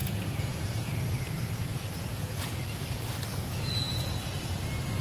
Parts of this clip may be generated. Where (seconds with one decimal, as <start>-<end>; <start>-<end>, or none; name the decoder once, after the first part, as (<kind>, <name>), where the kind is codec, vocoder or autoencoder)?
0.0-1.0 (vocoder, Vocos); 1.6-2.6; 3.3-4.2